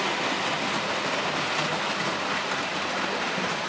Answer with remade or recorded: recorded